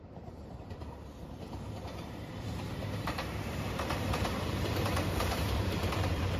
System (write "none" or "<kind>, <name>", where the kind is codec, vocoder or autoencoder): vocoder, BigVGAN v2